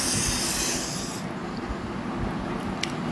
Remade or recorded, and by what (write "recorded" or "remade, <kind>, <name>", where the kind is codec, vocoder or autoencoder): recorded